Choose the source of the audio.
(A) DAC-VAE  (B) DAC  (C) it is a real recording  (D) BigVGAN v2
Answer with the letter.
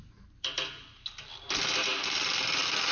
C